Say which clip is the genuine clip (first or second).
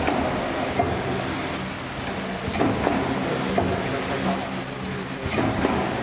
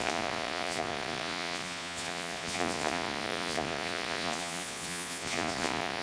first